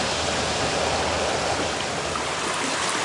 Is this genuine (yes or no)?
yes